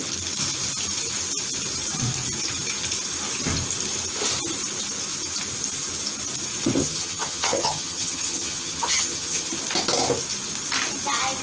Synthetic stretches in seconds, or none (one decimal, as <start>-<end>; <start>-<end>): 6.8-9.5